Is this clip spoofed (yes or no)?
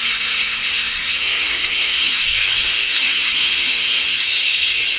yes